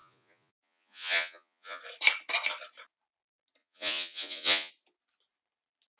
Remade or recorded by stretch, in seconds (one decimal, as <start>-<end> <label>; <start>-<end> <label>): 0.0-1.8 remade; 1.8-3.6 recorded; 3.6-4.7 remade; 4.7-6.0 recorded